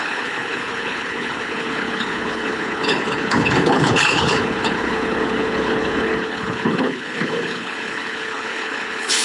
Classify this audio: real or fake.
fake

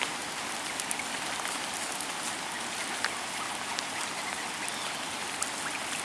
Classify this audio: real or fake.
real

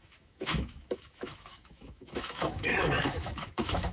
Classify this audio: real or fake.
fake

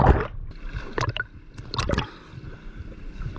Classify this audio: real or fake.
real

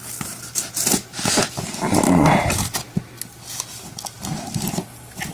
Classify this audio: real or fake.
real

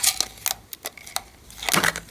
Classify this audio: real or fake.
real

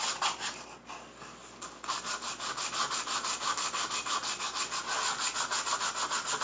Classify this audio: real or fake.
real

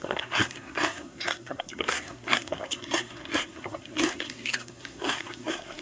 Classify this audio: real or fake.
fake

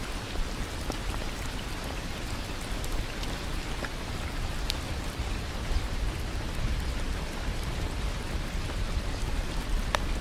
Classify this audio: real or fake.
fake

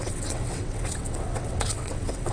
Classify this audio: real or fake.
fake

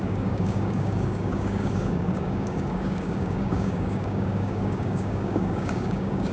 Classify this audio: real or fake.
fake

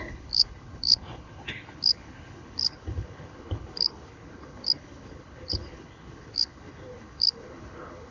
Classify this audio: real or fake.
fake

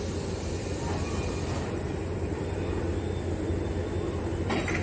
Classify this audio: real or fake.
real